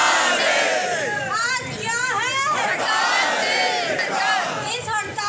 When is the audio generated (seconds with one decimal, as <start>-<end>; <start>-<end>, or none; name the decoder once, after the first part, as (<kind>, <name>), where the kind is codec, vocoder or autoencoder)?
none

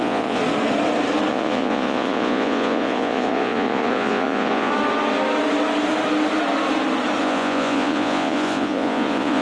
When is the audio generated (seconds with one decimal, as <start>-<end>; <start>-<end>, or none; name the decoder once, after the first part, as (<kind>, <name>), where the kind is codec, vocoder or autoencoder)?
0.0-0.4 (vocoder, Vocos); 1.3-4.7; 7.2-9.4